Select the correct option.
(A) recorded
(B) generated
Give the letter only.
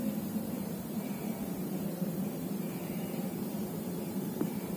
B